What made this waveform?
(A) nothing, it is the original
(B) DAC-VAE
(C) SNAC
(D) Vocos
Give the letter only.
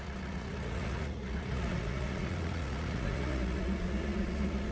D